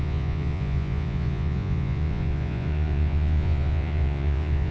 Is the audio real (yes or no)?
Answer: no